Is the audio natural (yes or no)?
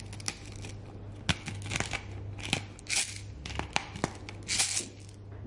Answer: yes